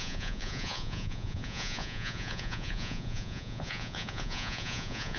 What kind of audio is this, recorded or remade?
remade